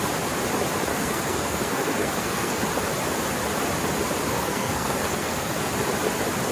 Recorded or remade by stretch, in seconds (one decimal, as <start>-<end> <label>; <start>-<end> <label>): 0.0-0.9 recorded; 0.9-2.6 remade; 2.6-4.3 recorded; 4.3-5.7 remade; 5.7-6.5 recorded